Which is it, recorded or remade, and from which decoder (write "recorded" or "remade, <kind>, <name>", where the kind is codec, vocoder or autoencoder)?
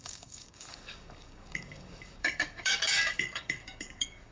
remade, codec, DAC